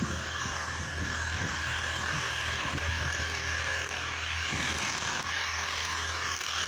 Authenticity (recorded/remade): remade